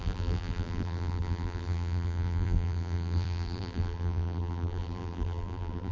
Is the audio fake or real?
fake